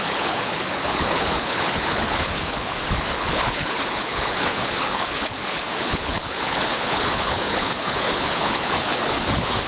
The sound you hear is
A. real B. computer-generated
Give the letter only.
B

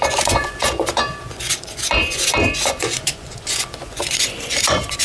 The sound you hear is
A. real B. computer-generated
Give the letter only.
B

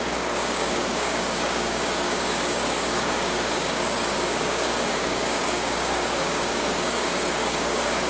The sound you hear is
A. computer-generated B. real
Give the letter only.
A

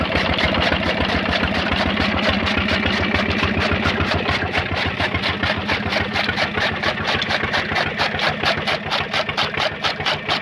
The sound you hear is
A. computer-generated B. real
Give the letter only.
B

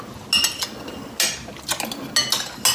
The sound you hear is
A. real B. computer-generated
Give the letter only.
A